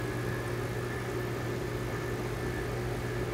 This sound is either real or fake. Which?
real